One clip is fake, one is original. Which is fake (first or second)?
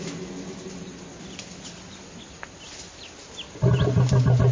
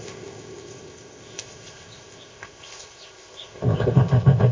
second